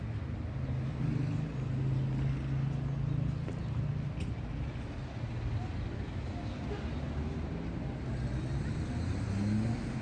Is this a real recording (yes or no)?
yes